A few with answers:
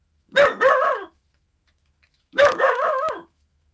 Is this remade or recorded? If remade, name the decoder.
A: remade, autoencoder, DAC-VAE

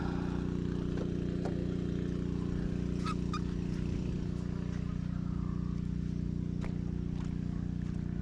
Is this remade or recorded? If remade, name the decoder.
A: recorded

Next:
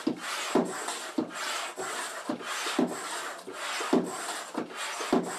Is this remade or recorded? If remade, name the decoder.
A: recorded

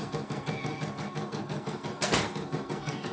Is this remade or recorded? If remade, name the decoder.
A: remade, codec, SNAC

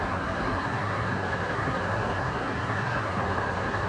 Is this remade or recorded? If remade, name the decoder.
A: remade, codec, SNAC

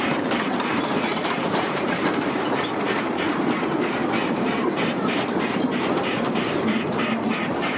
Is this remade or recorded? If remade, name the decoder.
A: remade, vocoder, BigVGAN v2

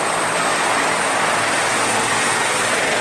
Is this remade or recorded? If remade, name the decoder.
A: recorded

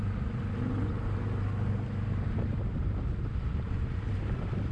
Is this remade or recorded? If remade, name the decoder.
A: recorded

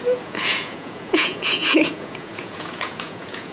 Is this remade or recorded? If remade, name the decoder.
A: remade, vocoder, Vocos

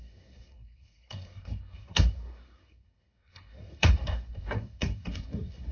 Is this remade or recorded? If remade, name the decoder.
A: remade, codec, SNAC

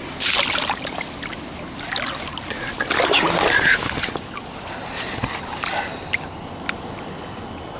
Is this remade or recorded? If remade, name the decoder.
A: recorded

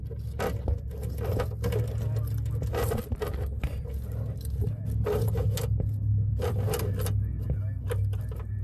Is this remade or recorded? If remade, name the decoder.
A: recorded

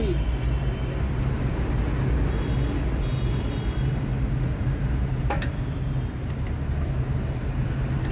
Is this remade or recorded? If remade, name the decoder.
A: recorded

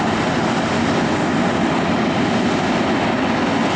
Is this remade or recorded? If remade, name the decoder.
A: recorded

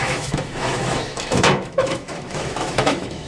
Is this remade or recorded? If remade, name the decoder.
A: remade, autoencoder, DAC-VAE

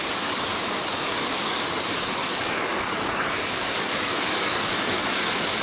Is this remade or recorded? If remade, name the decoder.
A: remade, codec, DAC